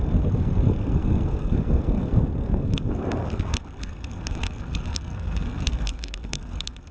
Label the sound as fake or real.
fake